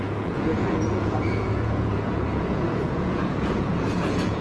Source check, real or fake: fake